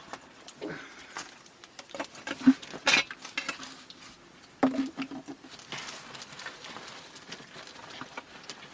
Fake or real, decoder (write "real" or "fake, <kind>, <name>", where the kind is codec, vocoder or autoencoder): real